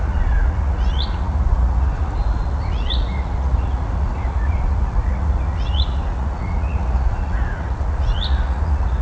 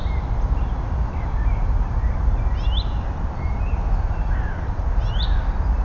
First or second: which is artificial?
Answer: first